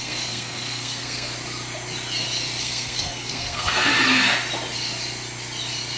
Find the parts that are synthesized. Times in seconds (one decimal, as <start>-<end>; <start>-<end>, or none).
0.0-1.3; 2.6-3.9